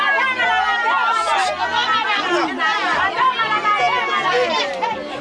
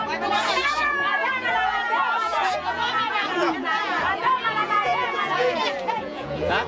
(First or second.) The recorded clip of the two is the first